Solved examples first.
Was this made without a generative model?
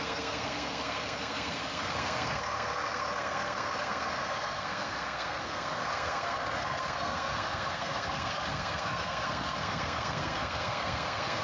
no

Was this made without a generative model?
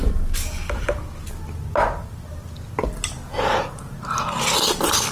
yes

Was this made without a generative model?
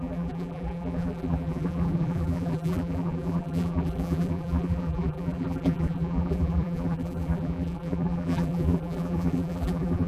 no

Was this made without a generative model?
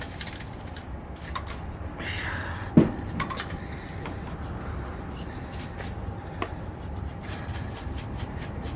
no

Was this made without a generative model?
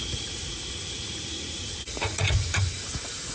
no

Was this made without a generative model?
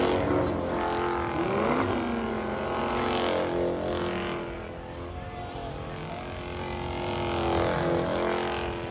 yes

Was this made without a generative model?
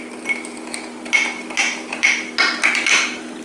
yes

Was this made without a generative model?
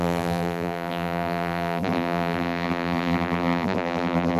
no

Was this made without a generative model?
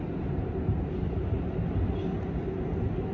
yes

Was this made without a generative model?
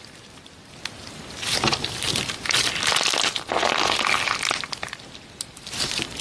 yes